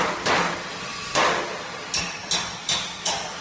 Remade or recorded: recorded